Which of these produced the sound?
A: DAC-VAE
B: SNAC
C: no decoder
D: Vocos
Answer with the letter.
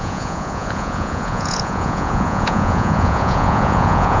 D